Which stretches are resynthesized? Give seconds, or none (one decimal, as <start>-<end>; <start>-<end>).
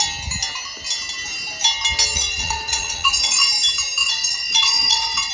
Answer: 2.1-3.4; 4.0-5.3